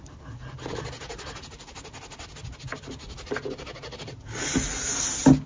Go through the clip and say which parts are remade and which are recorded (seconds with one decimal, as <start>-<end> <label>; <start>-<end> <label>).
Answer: 0.0-5.5 recorded